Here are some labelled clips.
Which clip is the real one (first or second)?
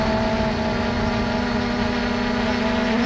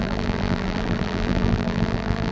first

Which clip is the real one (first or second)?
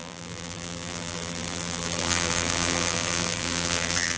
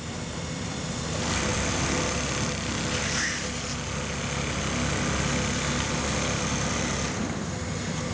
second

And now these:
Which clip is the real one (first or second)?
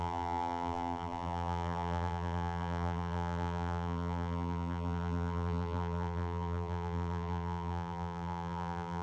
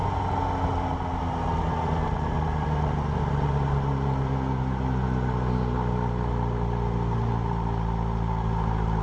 second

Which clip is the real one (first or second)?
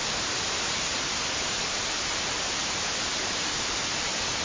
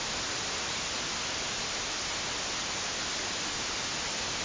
second